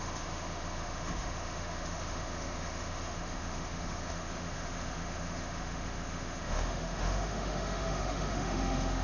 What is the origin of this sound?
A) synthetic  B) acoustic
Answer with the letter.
A